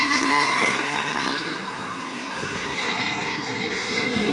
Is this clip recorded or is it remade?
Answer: remade